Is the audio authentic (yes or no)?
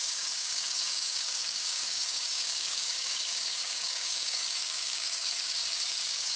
no